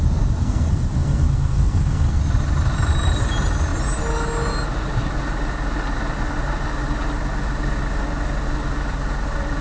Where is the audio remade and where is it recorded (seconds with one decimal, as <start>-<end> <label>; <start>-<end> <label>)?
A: 0.0-0.4 recorded; 0.4-2.2 remade; 2.2-9.6 recorded